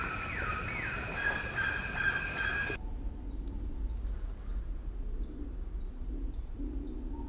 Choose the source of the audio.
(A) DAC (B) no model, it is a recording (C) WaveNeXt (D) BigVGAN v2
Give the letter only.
B